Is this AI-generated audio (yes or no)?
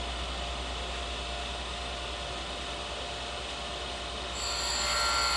no